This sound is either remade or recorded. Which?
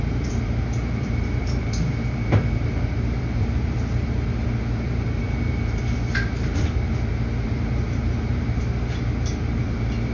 remade